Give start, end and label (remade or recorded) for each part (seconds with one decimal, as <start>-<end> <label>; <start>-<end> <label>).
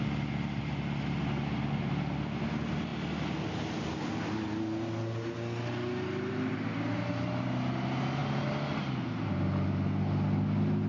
0.0-10.9 recorded